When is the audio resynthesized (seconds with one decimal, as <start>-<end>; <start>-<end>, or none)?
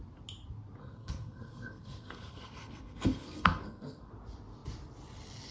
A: 0.8-4.1